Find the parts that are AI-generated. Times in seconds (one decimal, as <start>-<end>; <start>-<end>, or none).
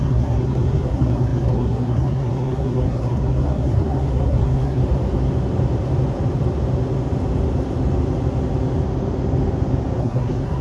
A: 0.0-4.8; 10.0-10.6